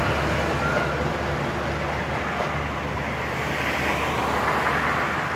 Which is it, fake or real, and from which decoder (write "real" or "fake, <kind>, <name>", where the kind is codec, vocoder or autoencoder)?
real